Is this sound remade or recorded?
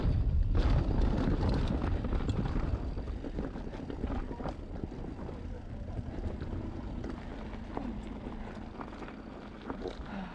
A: recorded